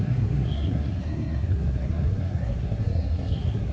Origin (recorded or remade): remade